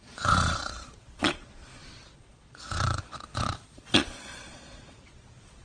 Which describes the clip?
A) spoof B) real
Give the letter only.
A